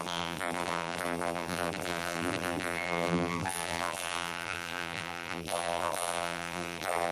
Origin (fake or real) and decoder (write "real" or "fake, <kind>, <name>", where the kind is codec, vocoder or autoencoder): fake, vocoder, BigVGAN v2